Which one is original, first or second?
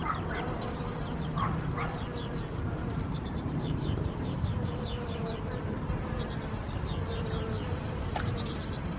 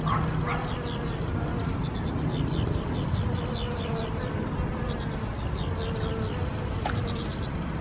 second